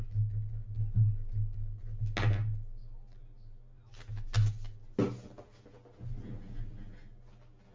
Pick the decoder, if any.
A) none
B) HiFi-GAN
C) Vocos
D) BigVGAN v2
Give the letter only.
A